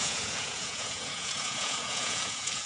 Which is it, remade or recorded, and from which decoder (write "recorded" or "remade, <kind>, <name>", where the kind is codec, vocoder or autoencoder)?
remade, vocoder, Vocos